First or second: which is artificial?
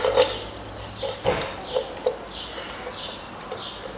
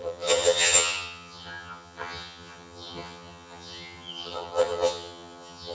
second